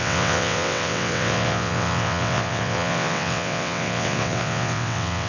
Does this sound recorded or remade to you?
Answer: remade